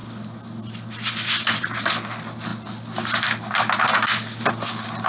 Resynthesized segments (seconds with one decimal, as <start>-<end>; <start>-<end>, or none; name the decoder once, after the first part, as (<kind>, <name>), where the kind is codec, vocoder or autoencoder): none